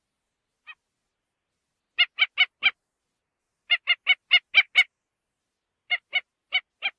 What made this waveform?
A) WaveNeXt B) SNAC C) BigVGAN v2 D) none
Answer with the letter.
D